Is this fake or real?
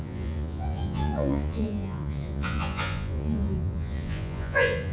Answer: fake